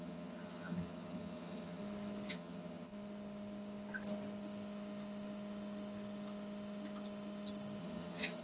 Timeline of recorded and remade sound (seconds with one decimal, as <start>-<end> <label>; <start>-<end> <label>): 0.0-1.8 remade; 1.8-2.3 recorded; 2.3-2.9 remade; 2.9-7.8 recorded; 7.8-8.4 remade

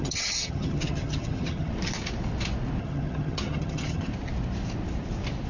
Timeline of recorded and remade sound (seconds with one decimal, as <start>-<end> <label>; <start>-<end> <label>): 0.0-1.7 remade; 1.7-2.8 recorded; 2.8-4.1 remade; 4.1-5.5 recorded

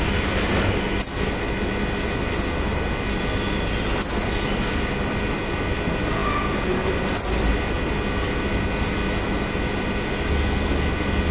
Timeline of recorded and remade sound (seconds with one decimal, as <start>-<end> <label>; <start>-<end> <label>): 0.0-11.3 recorded

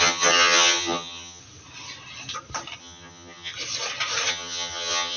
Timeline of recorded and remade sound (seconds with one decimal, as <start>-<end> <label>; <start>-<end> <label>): 0.0-1.4 remade; 1.4-2.8 recorded; 2.8-3.5 remade; 3.5-4.3 recorded; 4.3-5.2 remade

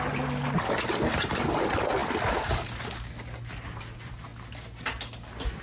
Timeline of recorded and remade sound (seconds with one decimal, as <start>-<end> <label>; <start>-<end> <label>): 0.0-5.6 recorded

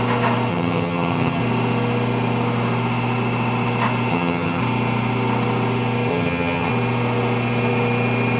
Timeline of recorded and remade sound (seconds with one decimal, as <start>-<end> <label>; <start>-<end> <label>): 0.0-0.5 recorded; 0.5-1.4 remade; 1.4-4.1 recorded; 4.1-4.6 remade; 4.6-6.1 recorded; 6.1-6.7 remade; 6.7-8.4 recorded